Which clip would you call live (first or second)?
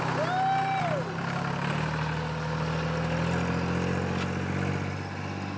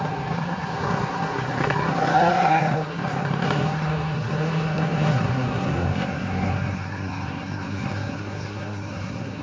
first